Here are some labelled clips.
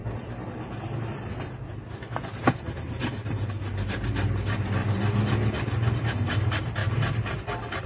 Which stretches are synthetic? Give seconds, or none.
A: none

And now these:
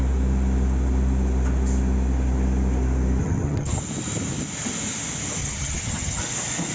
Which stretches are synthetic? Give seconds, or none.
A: 3.2-3.8 (vocoder, HiFi-GAN); 5.4-6.2

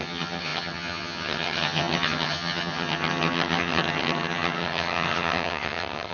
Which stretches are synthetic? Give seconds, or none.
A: 0.0-6.1 (vocoder, HiFi-GAN)

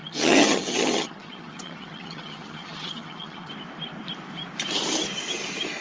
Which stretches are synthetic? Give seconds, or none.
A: 0.0-3.5 (vocoder, HiFi-GAN)

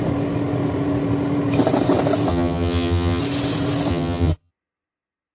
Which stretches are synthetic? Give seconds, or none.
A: 2.3-3.2 (vocoder, HiFi-GAN); 3.9-4.5

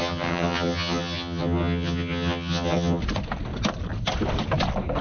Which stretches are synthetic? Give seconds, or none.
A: 0.0-3.0 (vocoder, HiFi-GAN)